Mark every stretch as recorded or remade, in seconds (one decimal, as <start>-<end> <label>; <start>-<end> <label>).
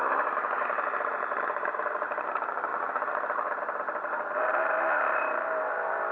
0.0-2.7 remade; 2.7-4.5 recorded; 4.5-6.1 remade